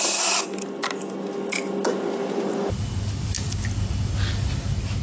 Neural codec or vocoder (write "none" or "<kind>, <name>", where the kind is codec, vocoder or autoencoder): none